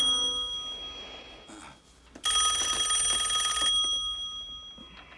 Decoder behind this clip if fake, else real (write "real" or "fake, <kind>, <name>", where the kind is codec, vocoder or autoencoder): real